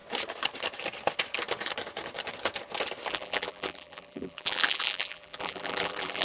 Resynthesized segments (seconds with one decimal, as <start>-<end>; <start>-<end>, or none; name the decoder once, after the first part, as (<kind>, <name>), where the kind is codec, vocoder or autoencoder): 3.1-6.2 (vocoder, BigVGAN v2)